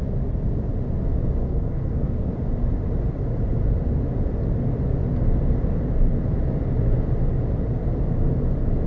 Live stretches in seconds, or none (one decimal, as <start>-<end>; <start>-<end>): 0.0-1.4; 2.3-8.9